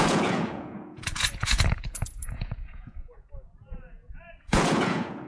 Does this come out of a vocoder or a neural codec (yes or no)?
yes